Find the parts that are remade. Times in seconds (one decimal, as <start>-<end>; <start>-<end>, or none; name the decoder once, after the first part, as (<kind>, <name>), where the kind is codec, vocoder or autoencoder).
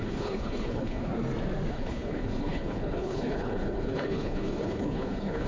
0.0-1.1 (codec, HILCodec); 1.7-5.5